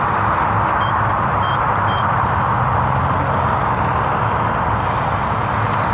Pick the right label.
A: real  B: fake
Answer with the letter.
A